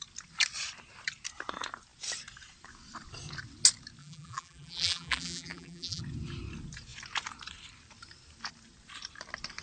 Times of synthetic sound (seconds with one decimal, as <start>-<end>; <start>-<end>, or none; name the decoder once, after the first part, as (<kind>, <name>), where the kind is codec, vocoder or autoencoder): 4.0-6.0 (vocoder, BigVGAN v2)